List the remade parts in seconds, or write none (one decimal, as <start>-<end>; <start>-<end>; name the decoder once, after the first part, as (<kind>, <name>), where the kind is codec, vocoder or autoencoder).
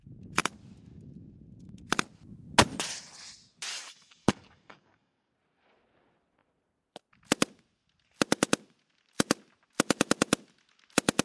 3.7-5.3 (codec, DAC)